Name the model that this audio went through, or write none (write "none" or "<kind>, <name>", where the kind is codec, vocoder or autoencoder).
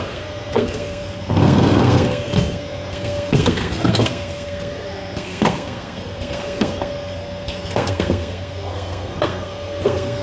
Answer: codec, SNAC